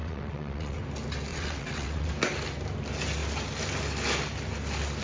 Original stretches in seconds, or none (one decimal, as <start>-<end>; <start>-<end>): 0.8-1.3; 2.1-5.0